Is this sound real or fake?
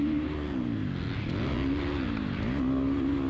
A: real